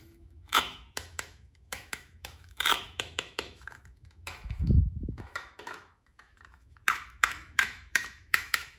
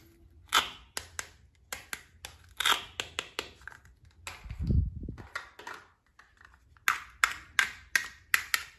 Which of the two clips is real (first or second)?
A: second